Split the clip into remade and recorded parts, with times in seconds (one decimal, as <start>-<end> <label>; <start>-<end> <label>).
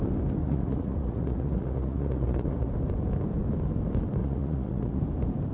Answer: 0.0-0.4 recorded; 0.4-2.7 remade; 2.7-4.2 recorded; 4.2-5.0 remade; 5.0-5.5 recorded